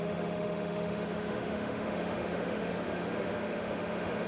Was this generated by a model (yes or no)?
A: yes